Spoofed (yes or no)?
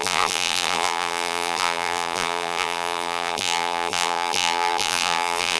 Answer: yes